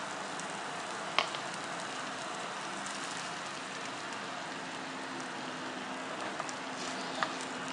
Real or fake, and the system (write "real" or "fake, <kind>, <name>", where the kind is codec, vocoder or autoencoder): real